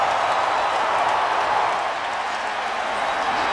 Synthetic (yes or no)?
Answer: no